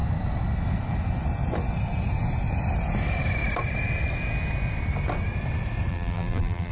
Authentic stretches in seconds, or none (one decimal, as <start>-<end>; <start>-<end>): 0.0-5.9